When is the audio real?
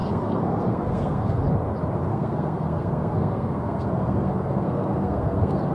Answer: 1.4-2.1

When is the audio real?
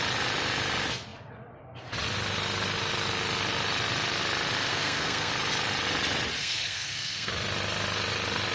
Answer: 0.0-4.7; 5.3-6.4; 7.3-8.5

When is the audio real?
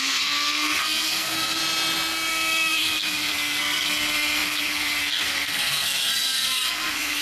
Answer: 1.6-2.3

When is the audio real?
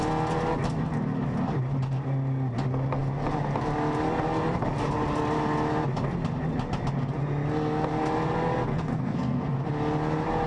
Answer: 0.0-8.7; 9.5-10.5